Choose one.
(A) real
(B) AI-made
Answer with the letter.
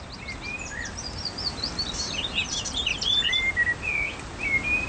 A